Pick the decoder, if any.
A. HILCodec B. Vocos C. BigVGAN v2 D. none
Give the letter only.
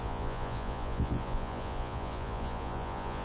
B